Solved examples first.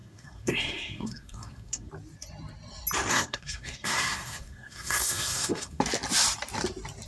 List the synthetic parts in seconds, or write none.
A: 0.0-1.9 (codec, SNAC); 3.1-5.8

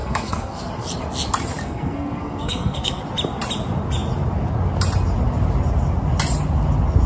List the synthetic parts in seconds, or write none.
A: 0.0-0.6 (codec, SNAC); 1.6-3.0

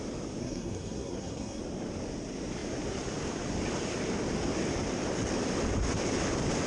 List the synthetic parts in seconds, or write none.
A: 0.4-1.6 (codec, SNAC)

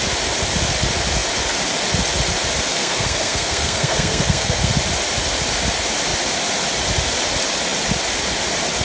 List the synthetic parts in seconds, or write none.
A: 2.7-4.7 (codec, SNAC)

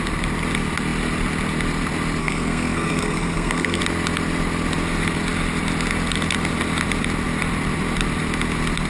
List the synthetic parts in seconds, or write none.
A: 2.2-3.8 (codec, SNAC)

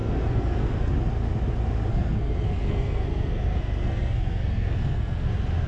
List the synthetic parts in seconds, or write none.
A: 0.0-0.9 (codec, SNAC); 1.9-5.3

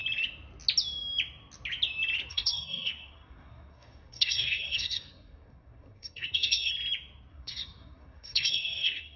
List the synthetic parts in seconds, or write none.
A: 2.3-6.7 (codec, SNAC); 7.3-9.2